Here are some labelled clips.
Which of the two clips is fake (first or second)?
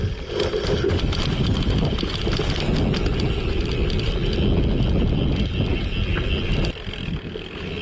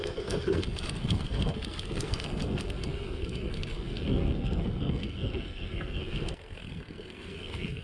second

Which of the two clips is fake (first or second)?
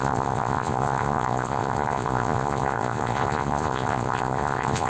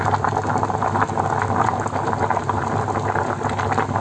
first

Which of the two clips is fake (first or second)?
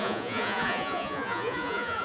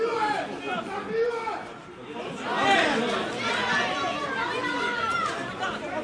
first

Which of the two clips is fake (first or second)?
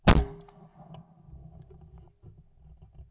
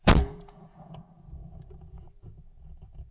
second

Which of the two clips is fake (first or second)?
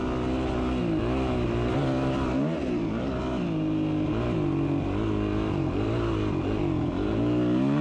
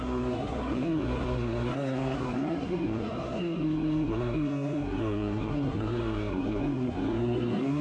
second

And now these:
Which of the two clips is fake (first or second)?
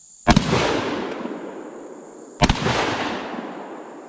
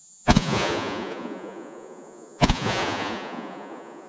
second